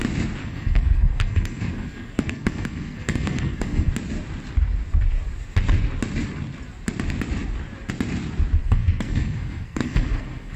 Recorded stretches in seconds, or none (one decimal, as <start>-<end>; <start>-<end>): 0.0-0.4; 3.9-8.6